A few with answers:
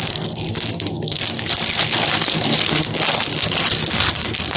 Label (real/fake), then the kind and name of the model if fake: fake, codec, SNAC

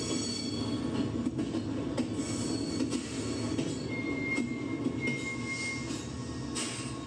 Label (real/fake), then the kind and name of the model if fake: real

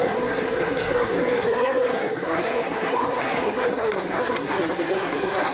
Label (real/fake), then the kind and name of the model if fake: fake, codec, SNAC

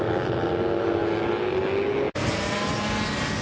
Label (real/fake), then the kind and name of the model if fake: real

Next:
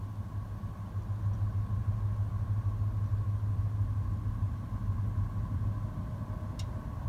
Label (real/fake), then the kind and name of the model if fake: real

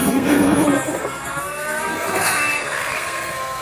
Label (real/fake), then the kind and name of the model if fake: fake, codec, SNAC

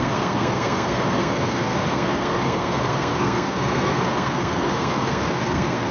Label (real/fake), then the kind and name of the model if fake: fake, codec, SNAC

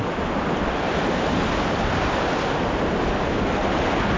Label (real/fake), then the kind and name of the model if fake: real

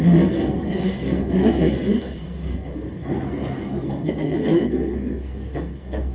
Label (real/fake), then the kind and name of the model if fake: fake, codec, SNAC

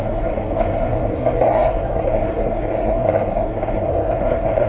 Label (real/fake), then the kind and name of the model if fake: fake, codec, SNAC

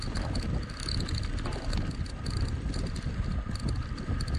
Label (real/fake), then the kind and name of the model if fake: real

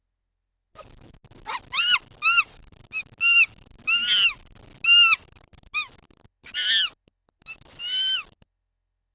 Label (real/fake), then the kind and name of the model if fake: real